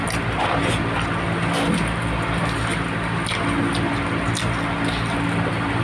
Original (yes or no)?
yes